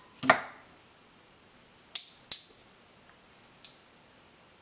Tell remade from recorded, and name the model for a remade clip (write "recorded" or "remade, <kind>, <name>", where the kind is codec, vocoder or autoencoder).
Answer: recorded